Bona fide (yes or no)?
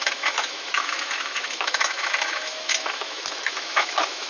no